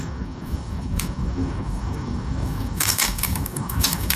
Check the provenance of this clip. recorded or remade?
remade